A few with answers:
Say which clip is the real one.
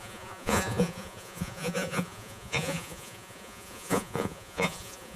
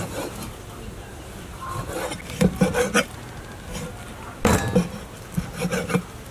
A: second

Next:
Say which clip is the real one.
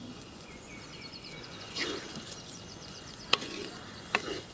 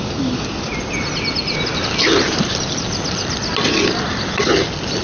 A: second